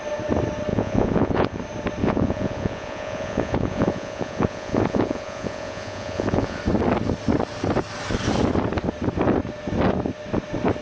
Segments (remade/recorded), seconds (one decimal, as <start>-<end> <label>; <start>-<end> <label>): 0.0-0.7 recorded; 0.7-1.6 remade; 1.6-2.0 recorded; 2.0-6.6 remade; 6.6-10.8 recorded